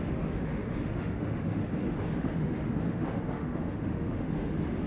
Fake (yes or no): yes